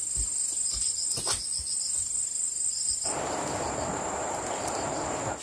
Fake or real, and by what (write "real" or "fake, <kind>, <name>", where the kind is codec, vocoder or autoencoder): real